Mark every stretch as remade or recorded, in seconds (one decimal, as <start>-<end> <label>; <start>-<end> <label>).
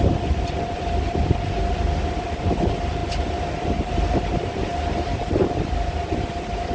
0.0-6.7 recorded